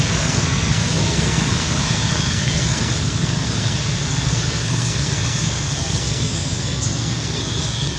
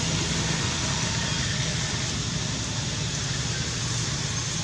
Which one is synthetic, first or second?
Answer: first